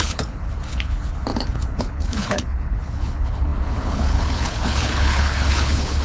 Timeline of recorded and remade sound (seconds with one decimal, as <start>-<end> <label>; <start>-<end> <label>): 0.0-6.0 remade